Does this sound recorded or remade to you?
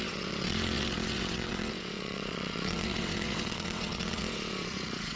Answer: remade